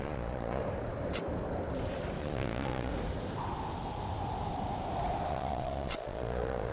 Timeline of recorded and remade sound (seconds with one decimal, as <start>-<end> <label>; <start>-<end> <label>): 0.0-0.6 remade; 0.6-2.2 recorded; 2.2-2.9 remade; 2.9-5.3 recorded; 5.3-6.7 remade